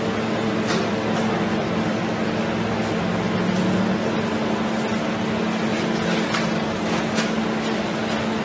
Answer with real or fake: real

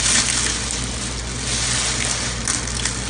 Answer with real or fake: real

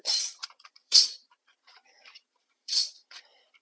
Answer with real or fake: fake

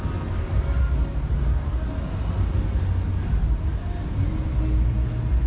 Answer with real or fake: real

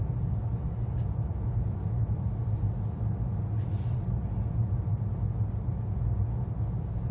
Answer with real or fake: real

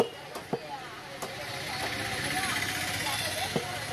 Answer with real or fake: real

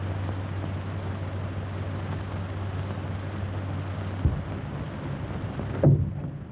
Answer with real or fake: real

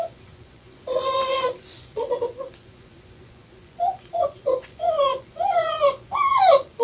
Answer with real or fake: fake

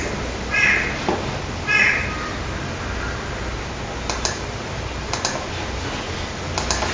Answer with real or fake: real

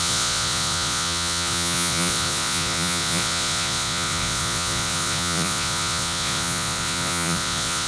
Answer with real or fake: fake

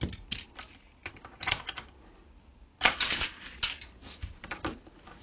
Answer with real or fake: real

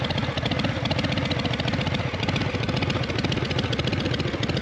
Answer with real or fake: real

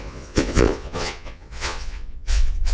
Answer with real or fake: fake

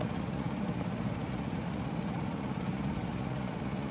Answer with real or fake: fake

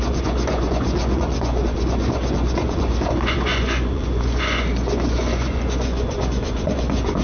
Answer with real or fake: fake